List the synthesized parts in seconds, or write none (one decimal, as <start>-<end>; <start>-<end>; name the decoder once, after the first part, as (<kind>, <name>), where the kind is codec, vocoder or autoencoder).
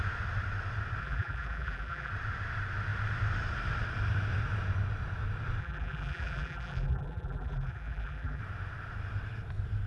1.0-2.1 (vocoder, BigVGAN v2); 5.6-8.4